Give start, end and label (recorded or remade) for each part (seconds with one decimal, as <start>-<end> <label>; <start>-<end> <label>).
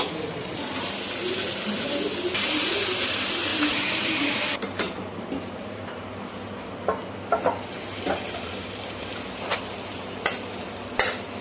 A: 0.0-3.5 recorded; 3.5-5.9 remade; 5.9-11.4 recorded